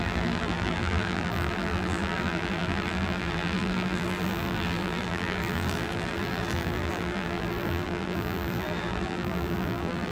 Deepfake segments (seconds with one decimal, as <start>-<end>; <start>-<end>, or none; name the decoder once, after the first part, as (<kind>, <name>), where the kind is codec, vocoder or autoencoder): 0.0-10.1 (vocoder, BigVGAN v2)